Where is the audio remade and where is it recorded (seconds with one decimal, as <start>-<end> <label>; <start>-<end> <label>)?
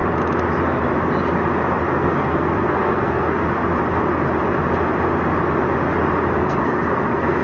0.0-1.9 recorded; 1.9-3.6 remade; 3.6-6.4 recorded; 6.4-7.4 remade